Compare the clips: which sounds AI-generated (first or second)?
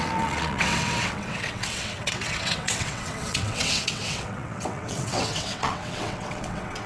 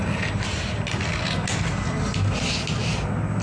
first